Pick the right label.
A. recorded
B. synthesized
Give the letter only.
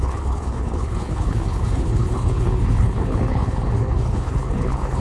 B